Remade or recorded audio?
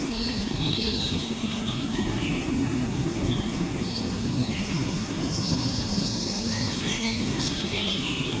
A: remade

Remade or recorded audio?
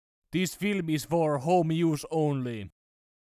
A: recorded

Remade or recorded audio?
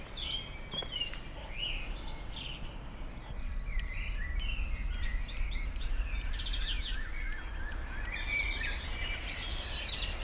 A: recorded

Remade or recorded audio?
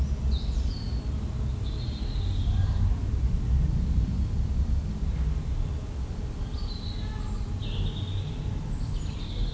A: recorded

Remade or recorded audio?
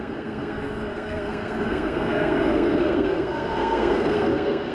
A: remade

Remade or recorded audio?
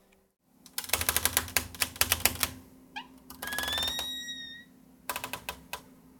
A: recorded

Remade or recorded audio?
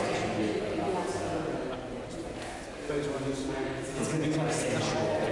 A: recorded